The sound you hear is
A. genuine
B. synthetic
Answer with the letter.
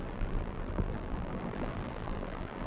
B